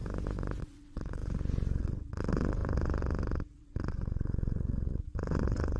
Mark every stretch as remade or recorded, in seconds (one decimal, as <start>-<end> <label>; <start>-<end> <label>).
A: 0.0-0.6 recorded; 0.6-1.2 remade; 1.2-1.8 recorded; 1.8-5.8 remade